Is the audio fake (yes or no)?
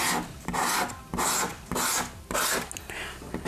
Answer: no